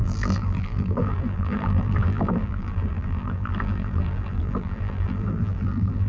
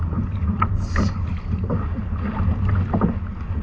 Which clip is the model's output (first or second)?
first